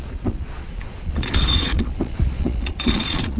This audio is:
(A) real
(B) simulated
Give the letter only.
B